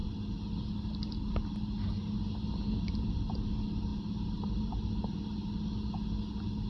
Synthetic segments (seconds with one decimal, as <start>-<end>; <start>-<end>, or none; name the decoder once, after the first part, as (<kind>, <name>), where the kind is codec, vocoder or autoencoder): none